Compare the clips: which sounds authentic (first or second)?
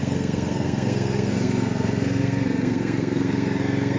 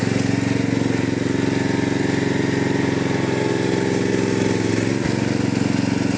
second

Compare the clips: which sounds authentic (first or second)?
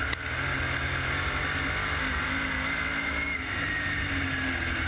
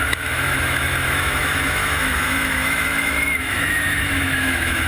first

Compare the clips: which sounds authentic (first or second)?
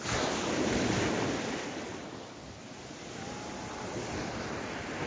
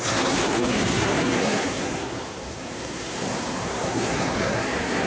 first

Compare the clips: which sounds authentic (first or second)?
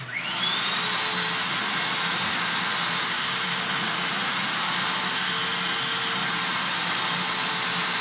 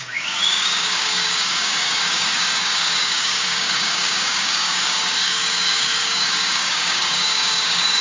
first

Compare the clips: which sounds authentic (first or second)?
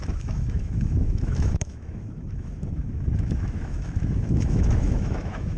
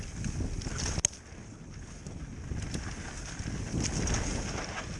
second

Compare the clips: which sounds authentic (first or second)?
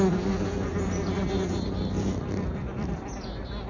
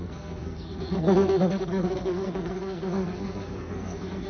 first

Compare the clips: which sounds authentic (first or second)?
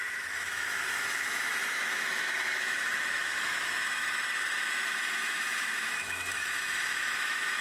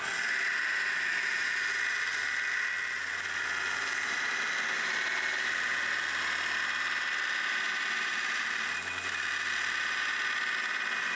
second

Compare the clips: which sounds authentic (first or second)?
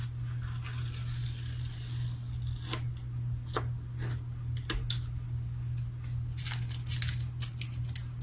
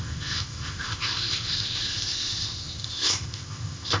first